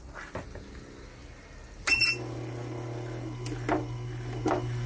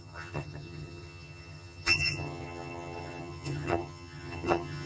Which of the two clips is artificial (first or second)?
second